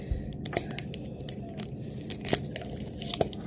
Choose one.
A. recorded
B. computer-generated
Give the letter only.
A